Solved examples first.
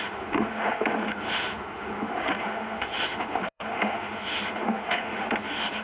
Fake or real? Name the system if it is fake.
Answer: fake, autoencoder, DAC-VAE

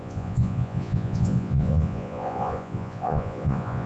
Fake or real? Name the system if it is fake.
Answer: fake, vocoder, Vocos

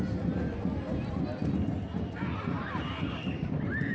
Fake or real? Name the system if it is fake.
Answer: fake, vocoder, BigVGAN v2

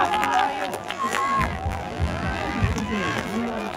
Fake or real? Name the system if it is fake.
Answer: fake, vocoder, BigVGAN v2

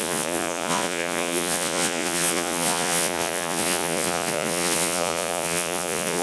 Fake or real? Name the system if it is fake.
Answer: fake, vocoder, Vocos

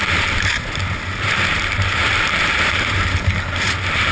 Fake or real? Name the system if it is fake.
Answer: fake, vocoder, BigVGAN v2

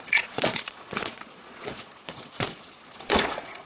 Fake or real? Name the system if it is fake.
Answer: fake, vocoder, Vocos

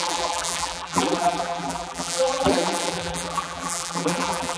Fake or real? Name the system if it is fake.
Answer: fake, vocoder, BigVGAN v2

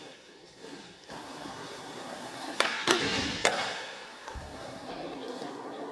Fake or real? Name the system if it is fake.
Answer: fake, codec, SNAC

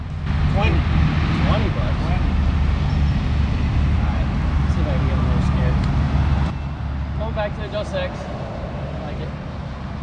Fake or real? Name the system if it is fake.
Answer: real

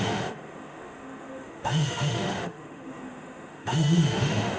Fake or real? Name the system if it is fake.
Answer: fake, autoencoder, DAC-VAE